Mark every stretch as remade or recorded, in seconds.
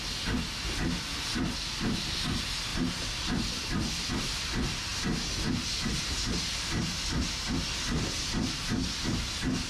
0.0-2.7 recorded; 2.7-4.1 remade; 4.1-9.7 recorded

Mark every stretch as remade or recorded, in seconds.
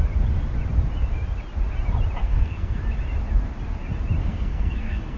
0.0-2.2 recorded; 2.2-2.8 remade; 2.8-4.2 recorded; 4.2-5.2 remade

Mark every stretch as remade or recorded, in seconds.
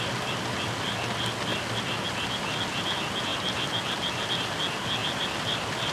0.0-3.3 recorded; 3.3-4.3 remade; 4.3-5.0 recorded; 5.0-5.9 remade